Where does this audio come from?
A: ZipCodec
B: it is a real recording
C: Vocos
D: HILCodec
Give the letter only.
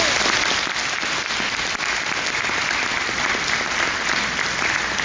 B